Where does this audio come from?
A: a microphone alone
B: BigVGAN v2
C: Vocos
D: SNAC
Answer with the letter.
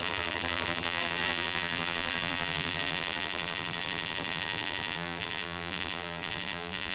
B